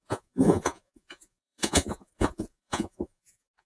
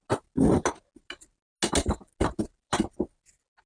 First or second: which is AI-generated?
first